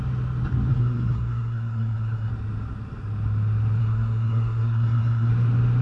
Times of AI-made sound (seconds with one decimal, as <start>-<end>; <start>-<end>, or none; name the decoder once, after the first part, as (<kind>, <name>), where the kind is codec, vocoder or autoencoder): 0.7-2.3 (codec, SNAC); 3.8-5.3